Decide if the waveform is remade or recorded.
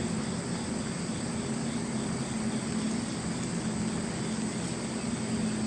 recorded